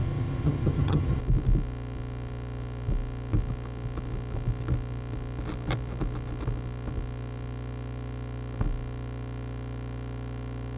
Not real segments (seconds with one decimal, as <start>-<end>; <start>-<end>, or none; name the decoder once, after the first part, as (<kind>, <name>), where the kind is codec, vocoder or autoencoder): 0.0-1.2 (vocoder, HiFi-GAN)